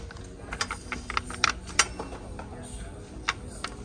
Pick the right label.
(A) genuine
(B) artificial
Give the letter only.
A